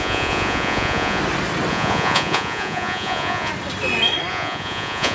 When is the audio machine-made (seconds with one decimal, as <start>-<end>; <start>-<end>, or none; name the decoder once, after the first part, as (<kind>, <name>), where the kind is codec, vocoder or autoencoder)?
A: 0.0-1.2 (vocoder, Vocos); 1.7-3.5; 4.3-5.1